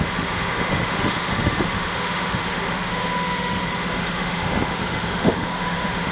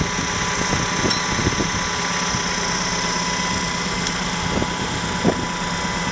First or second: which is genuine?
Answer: second